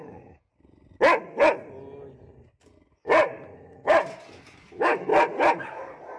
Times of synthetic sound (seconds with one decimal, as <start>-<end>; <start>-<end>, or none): 0.0-0.5; 4.2-5.1